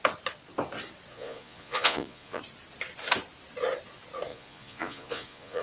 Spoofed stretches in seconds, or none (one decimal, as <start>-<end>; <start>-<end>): 1.1-2.4; 4.3-5.6